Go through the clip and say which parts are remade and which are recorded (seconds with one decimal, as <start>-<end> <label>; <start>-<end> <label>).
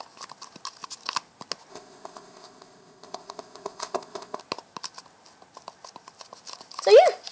0.0-1.7 recorded; 1.7-4.4 remade; 4.4-7.3 recorded